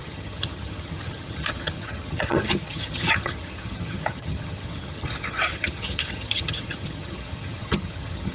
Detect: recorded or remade remade